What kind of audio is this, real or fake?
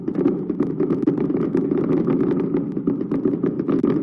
real